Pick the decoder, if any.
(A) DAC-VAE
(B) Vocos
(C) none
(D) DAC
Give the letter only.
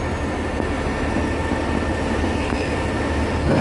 C